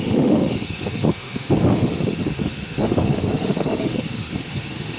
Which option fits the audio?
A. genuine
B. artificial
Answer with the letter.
B